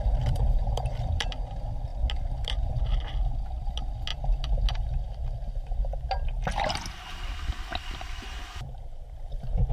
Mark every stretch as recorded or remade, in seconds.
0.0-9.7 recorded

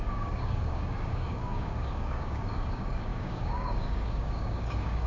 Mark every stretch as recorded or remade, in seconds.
0.0-5.1 remade

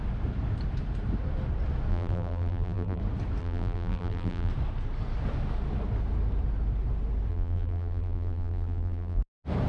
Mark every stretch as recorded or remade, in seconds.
0.0-1.9 recorded; 1.9-3.0 remade; 3.0-3.4 recorded; 3.4-4.5 remade; 4.5-7.3 recorded; 7.3-9.2 remade; 9.2-9.7 recorded

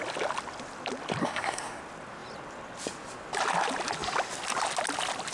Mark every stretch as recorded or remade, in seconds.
0.0-1.2 recorded; 1.2-1.8 remade; 1.8-5.3 recorded

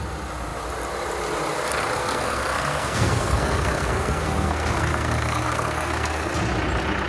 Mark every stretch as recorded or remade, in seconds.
0.0-2.0 recorded; 2.0-6.3 remade; 6.3-7.1 recorded

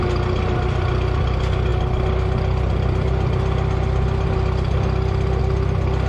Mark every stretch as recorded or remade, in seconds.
0.0-6.1 recorded